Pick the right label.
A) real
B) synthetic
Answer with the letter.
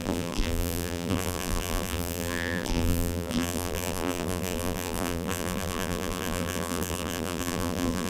B